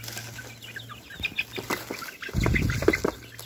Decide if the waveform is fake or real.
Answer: real